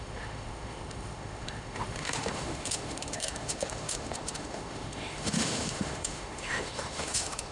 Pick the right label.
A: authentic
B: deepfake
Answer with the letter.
B